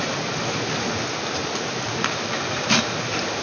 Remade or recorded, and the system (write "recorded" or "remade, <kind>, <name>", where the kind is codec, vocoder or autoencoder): recorded